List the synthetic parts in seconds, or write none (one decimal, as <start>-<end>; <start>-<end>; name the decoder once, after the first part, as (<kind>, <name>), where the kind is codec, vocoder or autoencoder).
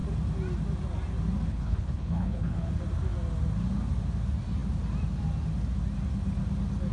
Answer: 1.5-2.7 (codec, HILCodec)